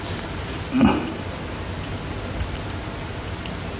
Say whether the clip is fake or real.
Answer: real